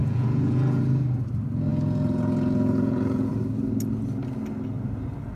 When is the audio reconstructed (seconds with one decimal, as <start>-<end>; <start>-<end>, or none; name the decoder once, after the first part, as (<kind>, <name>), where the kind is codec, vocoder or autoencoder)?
0.0-0.8 (vocoder, Vocos); 1.7-3.3